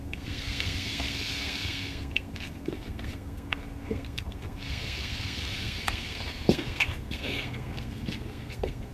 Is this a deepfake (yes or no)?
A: yes